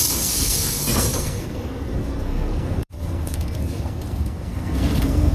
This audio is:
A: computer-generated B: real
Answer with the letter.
A